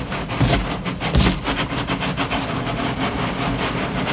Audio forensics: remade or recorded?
recorded